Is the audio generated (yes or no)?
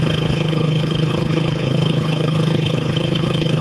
yes